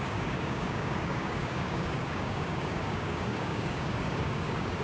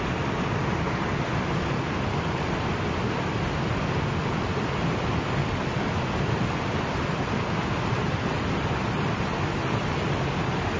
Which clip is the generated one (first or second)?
first